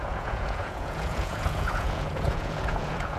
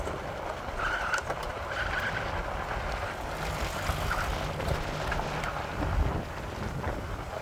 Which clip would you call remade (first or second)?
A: first